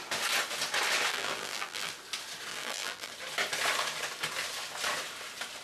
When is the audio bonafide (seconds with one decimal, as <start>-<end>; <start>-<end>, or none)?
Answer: 0.0-1.1; 1.9-2.5; 3.1-5.6